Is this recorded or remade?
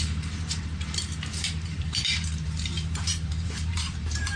remade